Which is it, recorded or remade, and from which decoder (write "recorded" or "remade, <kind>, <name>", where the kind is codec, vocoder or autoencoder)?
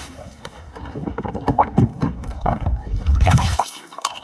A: remade, codec, SNAC